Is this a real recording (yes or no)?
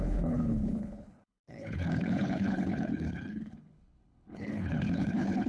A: no